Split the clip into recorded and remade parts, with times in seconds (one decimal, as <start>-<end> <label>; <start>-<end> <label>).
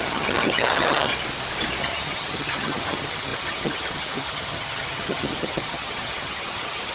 0.0-1.1 remade; 1.1-1.8 recorded; 1.8-6.9 remade